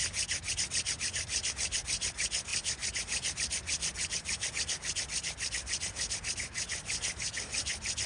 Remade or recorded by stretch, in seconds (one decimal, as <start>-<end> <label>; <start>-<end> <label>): 0.0-2.5 recorded; 2.5-4.5 remade; 4.5-8.1 recorded